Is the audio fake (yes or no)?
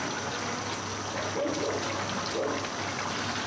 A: no